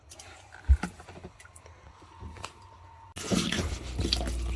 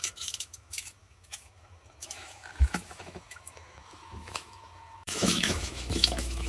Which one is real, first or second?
first